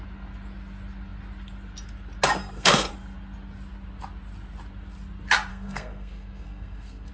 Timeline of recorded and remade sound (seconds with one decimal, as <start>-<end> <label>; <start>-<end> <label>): 0.0-2.4 recorded; 2.4-2.9 remade; 2.9-5.5 recorded; 5.5-7.1 remade